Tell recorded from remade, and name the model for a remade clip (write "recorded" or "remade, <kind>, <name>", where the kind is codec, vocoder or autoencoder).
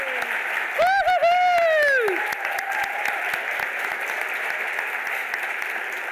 recorded